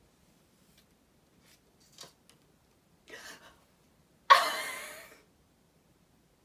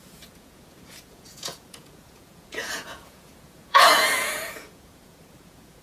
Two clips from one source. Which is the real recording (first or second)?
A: first